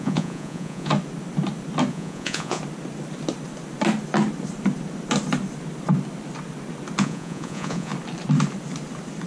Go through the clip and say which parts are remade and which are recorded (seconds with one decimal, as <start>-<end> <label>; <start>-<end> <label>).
0.0-0.9 remade; 0.9-1.9 recorded; 1.9-2.6 remade; 2.6-7.0 recorded; 7.0-7.9 remade; 7.9-9.3 recorded